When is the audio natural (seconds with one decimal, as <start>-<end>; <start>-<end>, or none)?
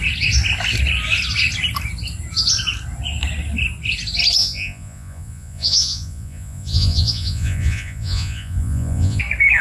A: 0.0-4.4; 9.2-9.6